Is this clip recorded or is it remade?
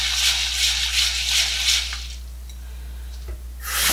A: recorded